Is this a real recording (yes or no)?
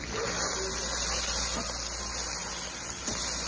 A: yes